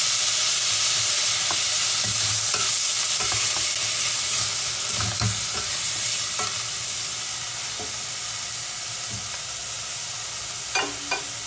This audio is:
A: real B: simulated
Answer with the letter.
A